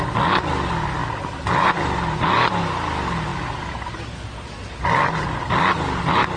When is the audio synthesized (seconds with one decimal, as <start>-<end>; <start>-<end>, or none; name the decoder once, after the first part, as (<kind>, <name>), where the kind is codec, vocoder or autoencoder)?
none